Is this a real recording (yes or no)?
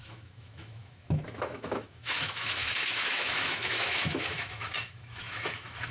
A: no